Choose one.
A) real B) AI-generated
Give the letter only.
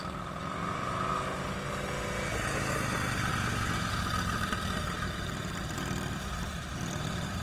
A